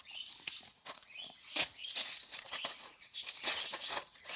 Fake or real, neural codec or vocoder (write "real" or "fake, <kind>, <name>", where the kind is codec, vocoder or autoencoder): fake, vocoder, Vocos